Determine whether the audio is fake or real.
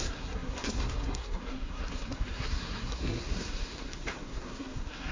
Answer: fake